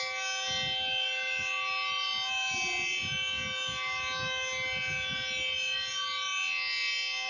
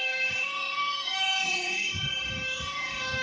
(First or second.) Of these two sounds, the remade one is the second